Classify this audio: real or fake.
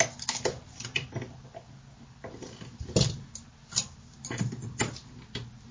real